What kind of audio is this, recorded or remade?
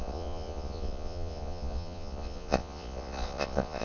remade